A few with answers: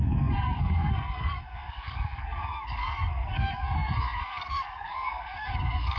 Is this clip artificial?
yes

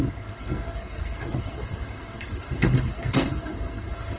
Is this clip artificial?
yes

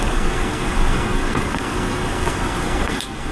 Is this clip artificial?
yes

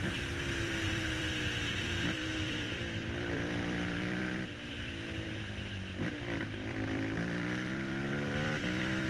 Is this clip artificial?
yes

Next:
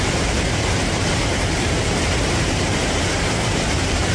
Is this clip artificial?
yes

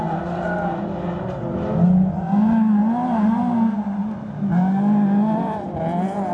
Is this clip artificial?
no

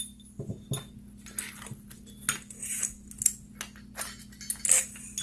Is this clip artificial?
no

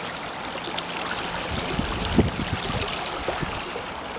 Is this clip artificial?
no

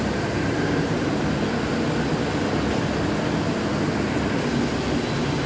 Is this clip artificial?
no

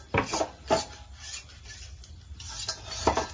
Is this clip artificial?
no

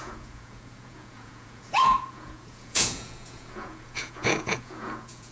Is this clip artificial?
yes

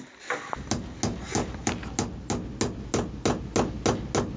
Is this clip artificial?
no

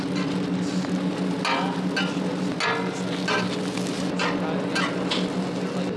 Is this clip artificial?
no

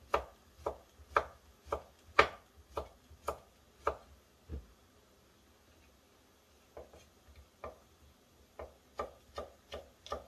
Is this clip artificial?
no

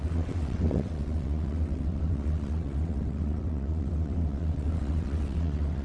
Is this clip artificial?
yes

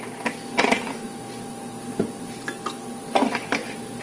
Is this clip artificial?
no